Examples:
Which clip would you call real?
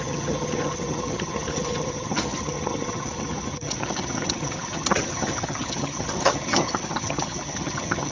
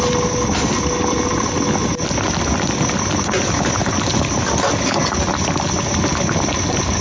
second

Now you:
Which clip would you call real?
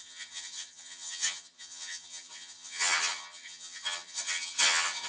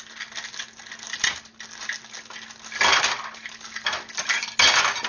second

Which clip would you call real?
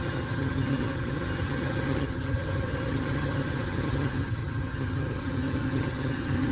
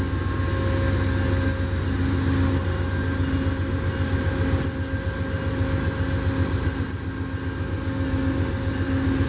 second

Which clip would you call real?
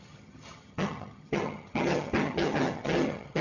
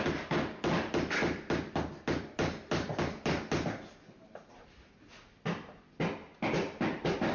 second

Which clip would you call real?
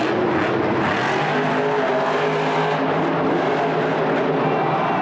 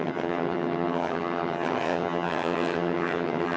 first